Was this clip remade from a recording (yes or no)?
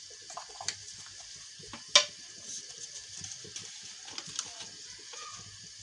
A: no